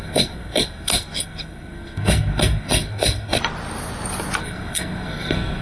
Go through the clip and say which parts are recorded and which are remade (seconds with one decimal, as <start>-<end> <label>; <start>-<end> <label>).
0.0-3.4 remade; 3.4-4.4 recorded; 4.4-5.6 remade